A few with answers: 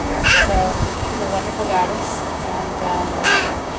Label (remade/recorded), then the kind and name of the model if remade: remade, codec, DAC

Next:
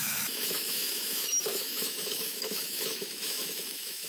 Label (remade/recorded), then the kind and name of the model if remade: remade, autoencoder, DAC-VAE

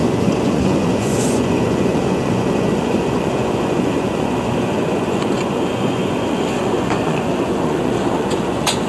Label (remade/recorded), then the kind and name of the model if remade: remade, vocoder, Vocos